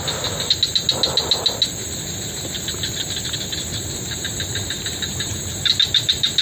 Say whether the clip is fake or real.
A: real